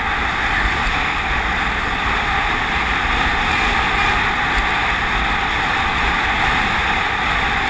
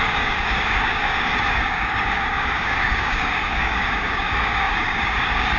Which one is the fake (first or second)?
second